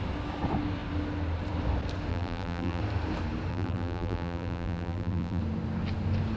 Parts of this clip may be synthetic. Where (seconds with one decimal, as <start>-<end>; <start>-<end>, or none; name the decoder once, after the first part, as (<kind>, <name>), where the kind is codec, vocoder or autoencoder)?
2.1-2.8 (vocoder, BigVGAN v2); 3.5-5.4